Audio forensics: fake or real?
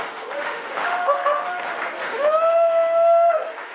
fake